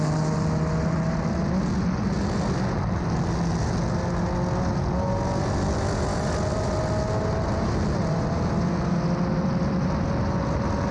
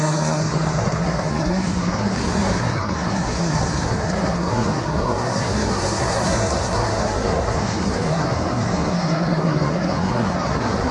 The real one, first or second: first